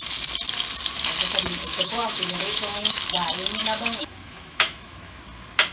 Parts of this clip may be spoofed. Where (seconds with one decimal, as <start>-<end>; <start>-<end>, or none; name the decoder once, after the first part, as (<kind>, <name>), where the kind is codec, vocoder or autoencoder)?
1.7-3.0 (autoencoder, DAC-VAE); 3.6-5.2